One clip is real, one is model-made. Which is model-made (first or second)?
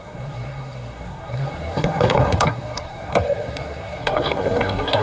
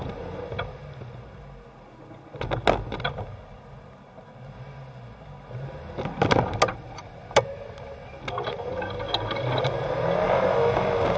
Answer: first